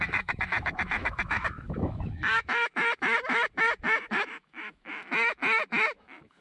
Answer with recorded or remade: remade